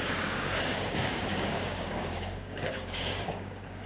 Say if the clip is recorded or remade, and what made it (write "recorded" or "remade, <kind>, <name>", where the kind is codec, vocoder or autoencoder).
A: remade, codec, DAC